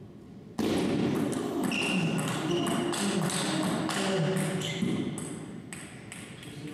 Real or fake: real